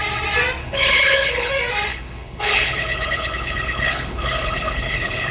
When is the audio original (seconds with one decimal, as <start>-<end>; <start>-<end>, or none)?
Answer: 0.0-0.6; 1.5-1.9